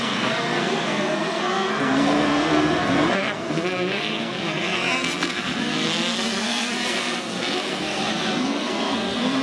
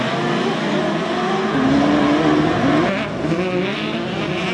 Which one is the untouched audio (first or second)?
second